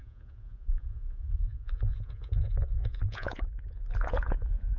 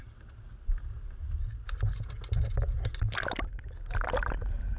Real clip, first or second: second